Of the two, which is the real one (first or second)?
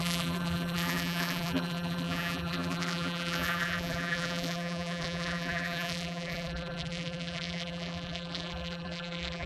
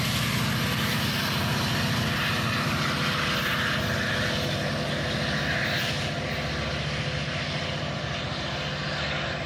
second